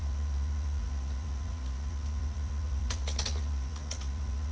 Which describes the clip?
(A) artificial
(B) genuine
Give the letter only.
A